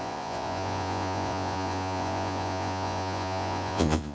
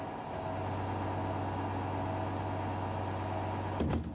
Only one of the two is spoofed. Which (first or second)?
first